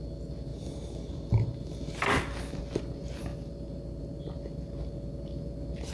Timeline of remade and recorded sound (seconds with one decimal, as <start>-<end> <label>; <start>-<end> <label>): 0.0-5.9 recorded